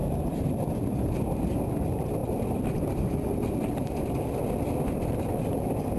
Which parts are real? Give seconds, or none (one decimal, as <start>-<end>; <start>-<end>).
1.4-6.0